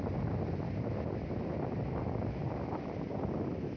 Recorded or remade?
recorded